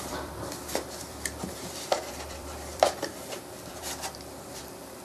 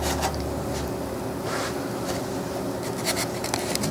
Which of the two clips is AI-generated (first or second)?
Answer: first